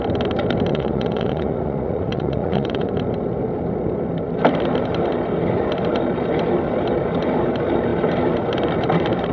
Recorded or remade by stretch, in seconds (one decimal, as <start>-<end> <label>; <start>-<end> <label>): 0.0-0.7 recorded; 0.7-2.9 remade; 2.9-9.3 recorded